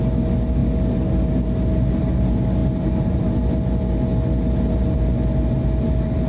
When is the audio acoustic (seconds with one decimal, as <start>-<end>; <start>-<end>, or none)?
0.0-6.3